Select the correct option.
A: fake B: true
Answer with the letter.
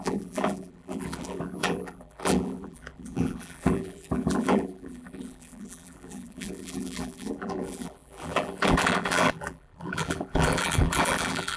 A